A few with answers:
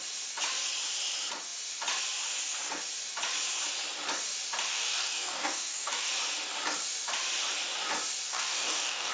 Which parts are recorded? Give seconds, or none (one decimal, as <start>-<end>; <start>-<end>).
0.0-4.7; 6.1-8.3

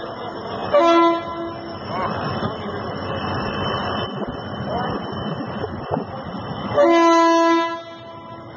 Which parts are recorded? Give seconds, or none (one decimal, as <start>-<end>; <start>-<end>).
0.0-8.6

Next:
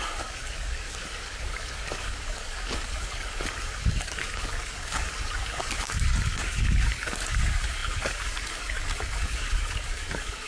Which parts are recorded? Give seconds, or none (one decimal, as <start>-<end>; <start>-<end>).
none

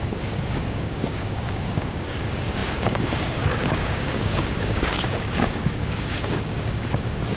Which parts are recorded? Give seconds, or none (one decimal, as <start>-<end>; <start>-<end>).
none